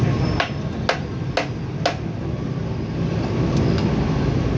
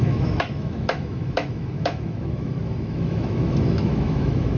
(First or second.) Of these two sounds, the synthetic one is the second